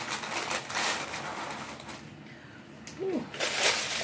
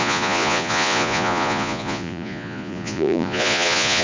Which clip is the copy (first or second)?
second